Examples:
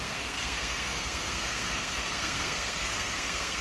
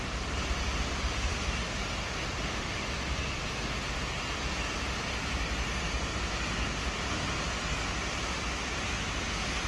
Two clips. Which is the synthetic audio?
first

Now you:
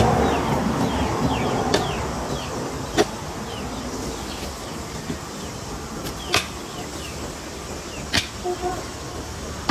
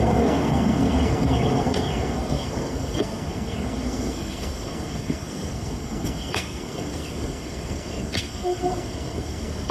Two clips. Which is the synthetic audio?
second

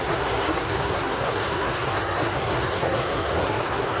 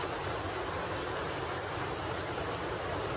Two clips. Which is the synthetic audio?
first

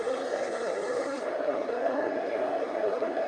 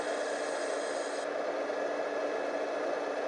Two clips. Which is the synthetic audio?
first